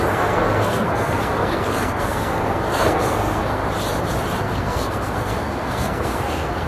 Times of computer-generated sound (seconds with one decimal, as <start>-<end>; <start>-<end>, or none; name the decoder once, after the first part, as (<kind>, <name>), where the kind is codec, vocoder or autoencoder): 0.0-3.6 (codec, SNAC); 4.4-6.7